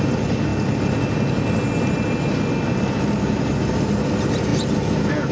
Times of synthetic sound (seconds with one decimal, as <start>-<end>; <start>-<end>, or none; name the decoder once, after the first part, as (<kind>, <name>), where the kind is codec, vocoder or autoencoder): none